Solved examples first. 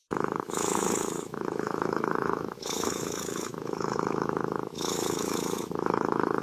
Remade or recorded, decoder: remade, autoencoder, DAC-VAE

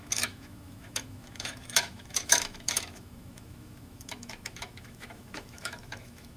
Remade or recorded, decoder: remade, autoencoder, DAC-VAE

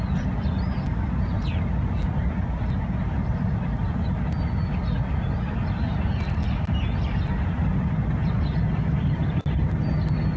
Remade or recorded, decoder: recorded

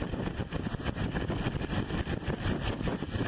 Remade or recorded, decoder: recorded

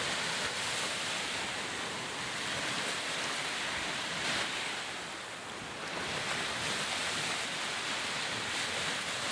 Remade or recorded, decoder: recorded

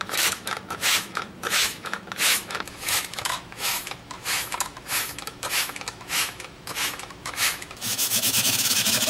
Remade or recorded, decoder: remade, autoencoder, DAC-VAE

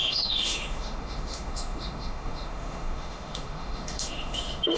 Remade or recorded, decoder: remade, autoencoder, DAC-VAE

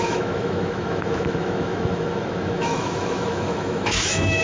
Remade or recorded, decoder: remade, autoencoder, DAC-VAE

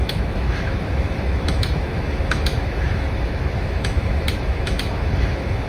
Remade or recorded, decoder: remade, autoencoder, DAC-VAE